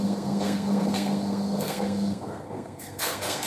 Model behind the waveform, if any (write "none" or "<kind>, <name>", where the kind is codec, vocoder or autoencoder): codec, SNAC